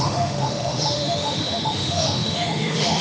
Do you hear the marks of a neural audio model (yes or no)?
yes